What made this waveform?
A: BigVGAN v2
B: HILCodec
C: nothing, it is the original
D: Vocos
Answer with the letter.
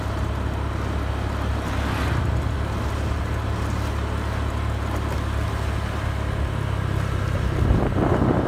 C